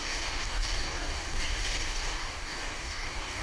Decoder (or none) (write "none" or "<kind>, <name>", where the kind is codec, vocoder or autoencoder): codec, DAC